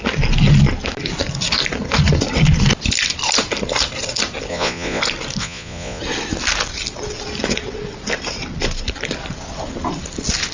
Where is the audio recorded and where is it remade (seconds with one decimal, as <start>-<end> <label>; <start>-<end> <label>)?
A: 0.0-4.5 recorded; 4.5-5.0 remade; 5.0-5.4 recorded; 5.4-6.0 remade; 6.0-10.5 recorded